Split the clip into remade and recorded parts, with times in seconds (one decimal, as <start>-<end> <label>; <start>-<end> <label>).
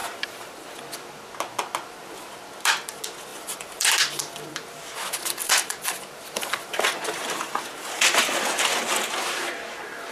0.0-0.8 remade; 0.8-3.3 recorded; 3.3-8.4 remade; 8.4-10.1 recorded